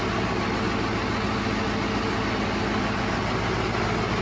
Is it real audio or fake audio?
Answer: real